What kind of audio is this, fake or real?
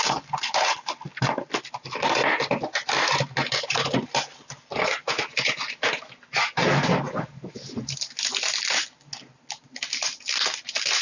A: real